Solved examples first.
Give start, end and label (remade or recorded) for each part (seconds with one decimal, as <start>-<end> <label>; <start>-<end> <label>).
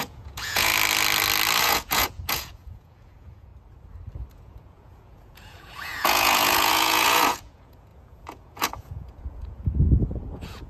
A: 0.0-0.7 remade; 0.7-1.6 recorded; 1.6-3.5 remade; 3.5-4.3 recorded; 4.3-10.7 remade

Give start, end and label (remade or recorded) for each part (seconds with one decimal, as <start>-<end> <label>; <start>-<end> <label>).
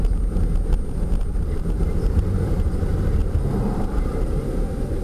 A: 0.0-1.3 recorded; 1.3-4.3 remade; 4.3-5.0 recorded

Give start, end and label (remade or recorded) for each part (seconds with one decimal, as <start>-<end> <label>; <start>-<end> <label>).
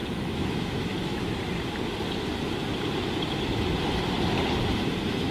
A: 0.0-1.4 remade; 1.4-5.3 recorded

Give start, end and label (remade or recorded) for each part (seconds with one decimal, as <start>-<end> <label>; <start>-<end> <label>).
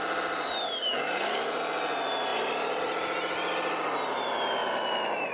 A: 0.0-5.3 recorded